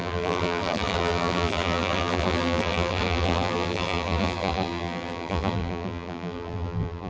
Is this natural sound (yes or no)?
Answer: no